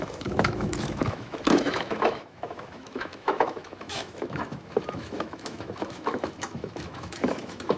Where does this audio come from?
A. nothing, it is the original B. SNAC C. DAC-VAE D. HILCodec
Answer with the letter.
C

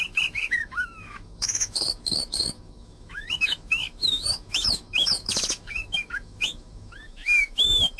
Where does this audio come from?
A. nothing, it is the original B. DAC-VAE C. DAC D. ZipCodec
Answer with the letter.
B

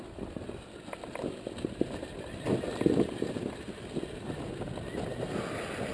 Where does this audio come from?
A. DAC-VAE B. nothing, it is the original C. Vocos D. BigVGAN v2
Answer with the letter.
B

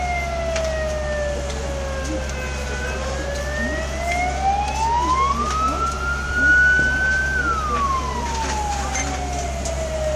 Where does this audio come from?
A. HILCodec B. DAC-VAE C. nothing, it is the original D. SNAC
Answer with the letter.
C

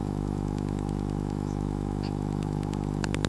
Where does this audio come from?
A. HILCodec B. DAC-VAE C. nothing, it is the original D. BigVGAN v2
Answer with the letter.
B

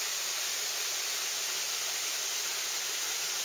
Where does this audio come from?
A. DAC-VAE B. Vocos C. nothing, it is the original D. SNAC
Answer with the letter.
C